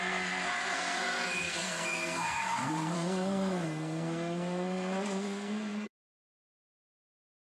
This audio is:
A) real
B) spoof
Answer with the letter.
B